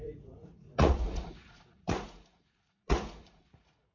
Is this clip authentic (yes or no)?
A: no